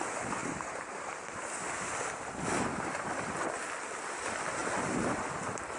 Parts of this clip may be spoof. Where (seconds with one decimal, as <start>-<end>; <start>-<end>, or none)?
0.4-1.4; 2.7-3.5; 4.6-5.3

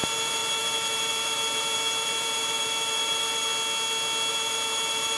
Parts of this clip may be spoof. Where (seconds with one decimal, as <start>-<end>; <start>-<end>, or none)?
0.0-3.5; 4.3-5.2